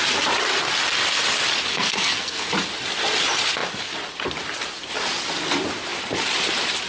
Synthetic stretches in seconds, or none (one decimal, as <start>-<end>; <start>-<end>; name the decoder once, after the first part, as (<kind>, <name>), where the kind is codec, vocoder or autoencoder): 1.7-2.5 (codec, SNAC)